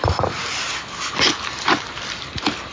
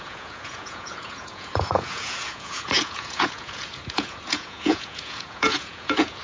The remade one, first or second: second